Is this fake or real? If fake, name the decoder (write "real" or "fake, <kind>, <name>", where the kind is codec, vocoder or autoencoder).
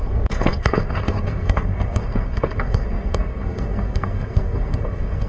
fake, codec, SNAC